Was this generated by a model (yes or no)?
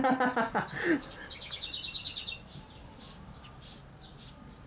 no